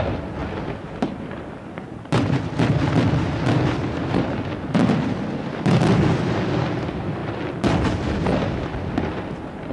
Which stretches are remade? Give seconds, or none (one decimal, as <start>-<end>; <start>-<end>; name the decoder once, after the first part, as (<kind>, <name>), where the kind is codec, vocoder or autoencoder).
none